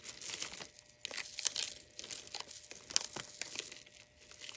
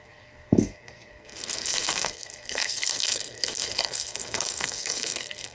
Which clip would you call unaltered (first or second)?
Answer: first